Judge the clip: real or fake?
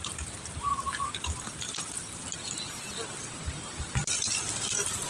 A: real